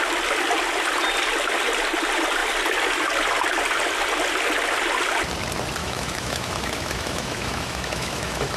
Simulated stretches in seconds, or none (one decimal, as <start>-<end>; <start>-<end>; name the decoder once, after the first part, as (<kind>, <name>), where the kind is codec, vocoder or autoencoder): 5.8-8.6 (autoencoder, DAC-VAE)